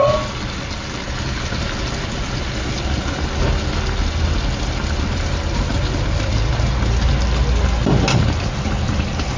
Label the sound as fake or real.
real